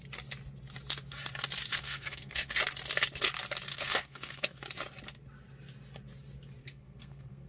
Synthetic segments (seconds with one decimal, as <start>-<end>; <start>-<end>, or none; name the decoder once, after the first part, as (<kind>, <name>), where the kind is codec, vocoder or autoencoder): 1.7-2.6 (codec, SNAC); 3.7-4.6; 6.6-7.5

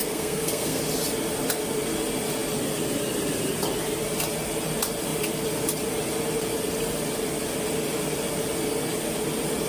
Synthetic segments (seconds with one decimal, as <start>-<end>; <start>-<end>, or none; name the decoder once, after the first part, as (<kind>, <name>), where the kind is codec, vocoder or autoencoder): 0.0-0.8 (codec, SNAC)

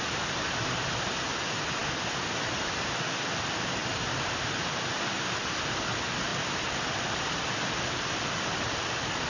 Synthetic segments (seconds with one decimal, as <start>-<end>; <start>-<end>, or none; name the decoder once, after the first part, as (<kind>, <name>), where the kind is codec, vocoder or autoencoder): 1.8-2.6 (vocoder, BigVGAN v2); 3.8-5.1; 6.3-8.0

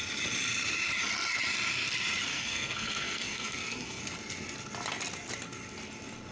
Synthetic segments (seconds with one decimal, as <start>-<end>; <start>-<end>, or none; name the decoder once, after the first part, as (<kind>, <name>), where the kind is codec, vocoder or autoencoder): 2.3-4.0 (codec, SNAC)

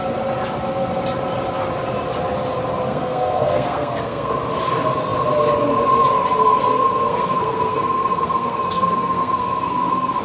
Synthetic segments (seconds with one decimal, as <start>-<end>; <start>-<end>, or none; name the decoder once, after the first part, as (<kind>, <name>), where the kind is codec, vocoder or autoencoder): 2.9-4.3 (codec, SNAC); 6.7-10.2